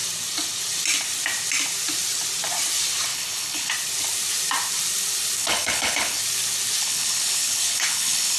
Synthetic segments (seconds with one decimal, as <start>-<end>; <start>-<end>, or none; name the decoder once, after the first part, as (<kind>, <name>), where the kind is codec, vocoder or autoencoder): 3.1-3.7 (codec, HILCodec); 5.4-6.2; 6.8-8.4